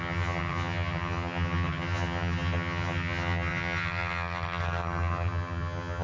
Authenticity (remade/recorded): remade